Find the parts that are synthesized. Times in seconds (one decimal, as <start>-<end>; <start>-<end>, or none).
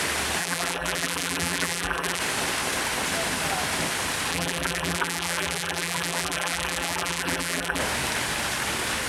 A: 0.4-2.2; 4.3-7.8